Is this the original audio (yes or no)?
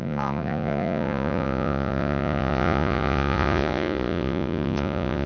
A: no